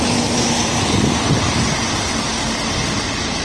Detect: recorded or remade recorded